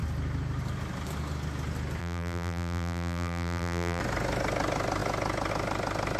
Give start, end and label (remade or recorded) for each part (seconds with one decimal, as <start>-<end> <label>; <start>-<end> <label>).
0.0-2.0 recorded; 2.0-4.0 remade; 4.0-6.2 recorded